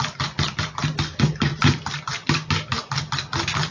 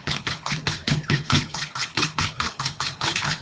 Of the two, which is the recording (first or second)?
first